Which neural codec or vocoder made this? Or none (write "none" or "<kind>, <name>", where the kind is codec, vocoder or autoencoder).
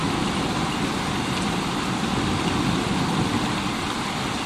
none